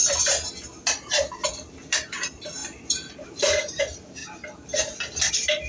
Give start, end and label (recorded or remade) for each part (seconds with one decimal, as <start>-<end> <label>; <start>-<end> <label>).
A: 0.0-2.6 recorded; 2.6-3.8 remade; 3.8-5.7 recorded